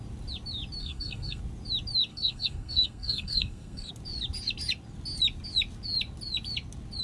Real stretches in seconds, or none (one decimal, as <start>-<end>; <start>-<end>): 0.0-0.8; 1.4-2.1; 3.9-7.0